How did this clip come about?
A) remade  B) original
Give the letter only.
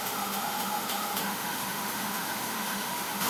A